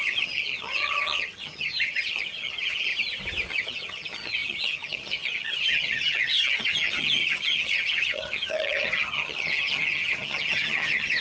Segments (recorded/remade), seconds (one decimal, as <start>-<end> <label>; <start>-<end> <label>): 0.0-2.9 remade; 2.9-3.5 recorded; 3.5-11.2 remade